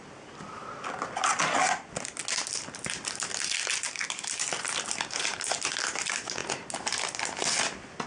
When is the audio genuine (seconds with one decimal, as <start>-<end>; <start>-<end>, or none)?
0.0-8.1